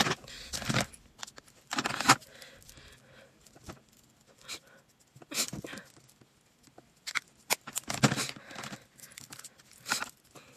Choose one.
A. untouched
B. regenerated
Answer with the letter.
A